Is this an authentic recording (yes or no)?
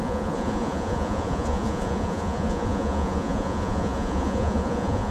no